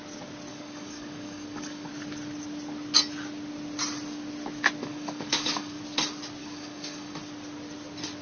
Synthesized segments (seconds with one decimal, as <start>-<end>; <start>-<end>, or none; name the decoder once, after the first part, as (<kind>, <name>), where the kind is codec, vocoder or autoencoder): 0.5-1.9 (codec, DAC); 4.8-5.8; 6.4-7.2